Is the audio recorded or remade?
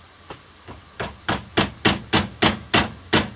recorded